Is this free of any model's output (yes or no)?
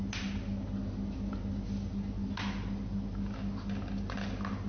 yes